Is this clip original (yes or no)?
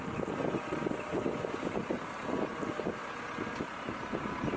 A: yes